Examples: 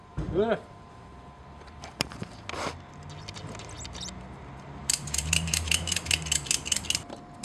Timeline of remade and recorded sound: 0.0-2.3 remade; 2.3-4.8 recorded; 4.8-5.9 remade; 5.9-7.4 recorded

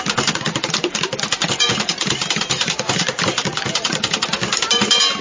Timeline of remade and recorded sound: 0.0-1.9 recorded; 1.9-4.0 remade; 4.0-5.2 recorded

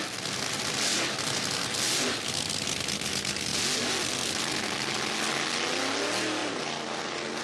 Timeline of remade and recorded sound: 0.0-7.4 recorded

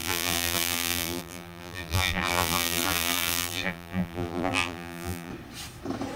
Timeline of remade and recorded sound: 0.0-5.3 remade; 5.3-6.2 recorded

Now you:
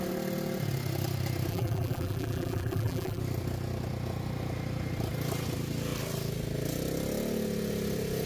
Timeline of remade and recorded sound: 0.0-1.5 recorded; 1.5-3.2 remade; 3.2-8.3 recorded